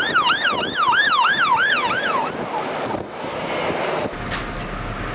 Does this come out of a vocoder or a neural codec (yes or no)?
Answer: no